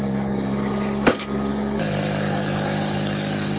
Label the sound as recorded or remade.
remade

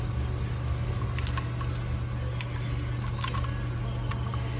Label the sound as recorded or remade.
recorded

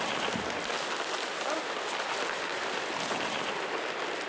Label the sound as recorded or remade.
recorded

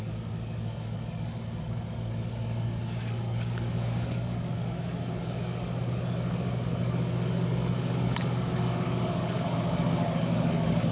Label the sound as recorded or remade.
remade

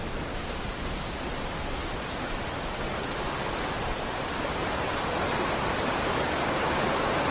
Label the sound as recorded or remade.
recorded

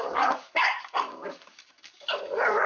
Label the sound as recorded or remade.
remade